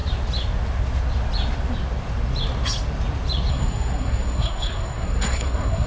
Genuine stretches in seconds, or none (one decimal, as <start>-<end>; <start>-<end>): 0.0-3.5